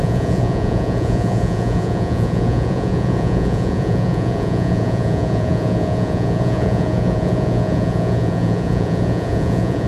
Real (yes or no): no